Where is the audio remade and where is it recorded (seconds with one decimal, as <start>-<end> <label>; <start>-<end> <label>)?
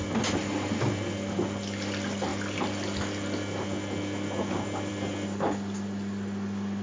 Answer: 0.0-6.8 recorded